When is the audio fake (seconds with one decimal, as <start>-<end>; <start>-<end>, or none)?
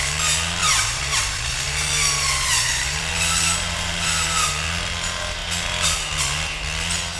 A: 0.6-4.5